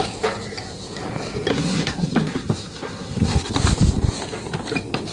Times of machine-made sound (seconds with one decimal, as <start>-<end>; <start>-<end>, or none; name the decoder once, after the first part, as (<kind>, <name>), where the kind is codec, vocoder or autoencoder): 1.5-3.5 (codec, SNAC)